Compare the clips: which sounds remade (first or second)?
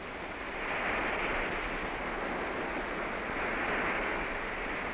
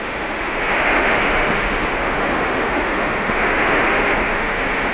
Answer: second